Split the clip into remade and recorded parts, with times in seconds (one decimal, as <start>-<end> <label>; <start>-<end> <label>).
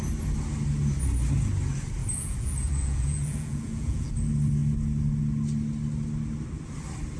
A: 0.0-2.0 recorded; 2.0-4.1 remade; 4.1-7.2 recorded